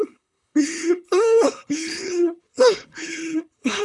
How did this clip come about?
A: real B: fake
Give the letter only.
B